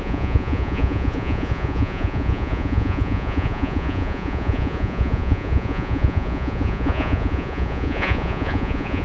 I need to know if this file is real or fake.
fake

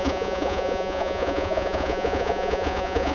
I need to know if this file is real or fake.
fake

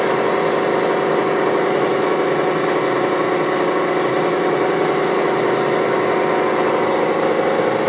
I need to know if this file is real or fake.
real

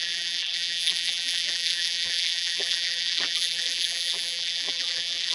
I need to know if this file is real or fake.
fake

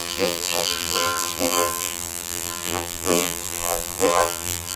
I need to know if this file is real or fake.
fake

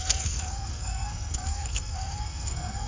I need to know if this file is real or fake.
fake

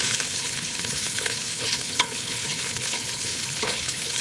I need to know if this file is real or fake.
fake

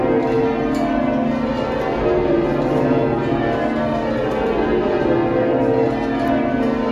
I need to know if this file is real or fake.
real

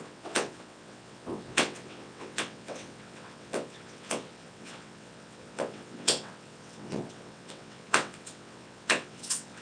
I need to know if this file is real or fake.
fake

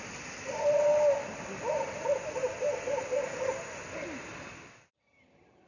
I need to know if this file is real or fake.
real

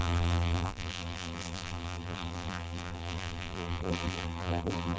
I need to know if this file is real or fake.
fake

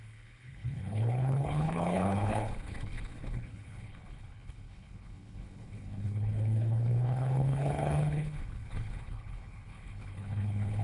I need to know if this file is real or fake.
fake